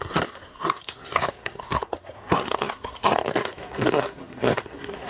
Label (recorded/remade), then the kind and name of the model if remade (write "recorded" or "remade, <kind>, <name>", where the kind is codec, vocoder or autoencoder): remade, codec, SNAC